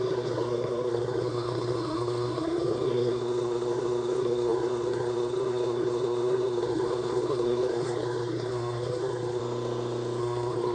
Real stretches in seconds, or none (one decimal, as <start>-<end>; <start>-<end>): 9.4-10.2